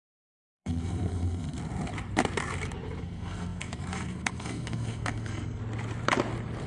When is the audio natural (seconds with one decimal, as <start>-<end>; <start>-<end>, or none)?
1.6-3.0; 5.6-6.7